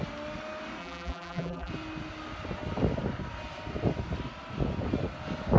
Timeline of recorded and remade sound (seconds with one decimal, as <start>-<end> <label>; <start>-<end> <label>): 0.0-0.8 recorded; 0.8-1.7 remade; 1.7-5.6 recorded